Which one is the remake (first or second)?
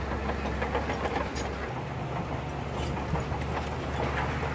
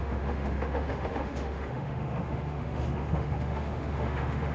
second